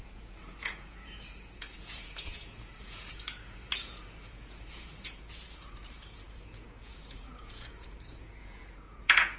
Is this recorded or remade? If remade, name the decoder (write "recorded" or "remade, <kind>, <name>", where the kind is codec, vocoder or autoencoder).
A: remade, vocoder, Vocos